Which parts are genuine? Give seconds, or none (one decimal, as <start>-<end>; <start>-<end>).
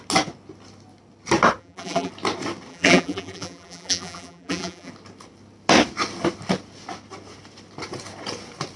0.0-1.6; 2.1-2.7; 4.9-8.8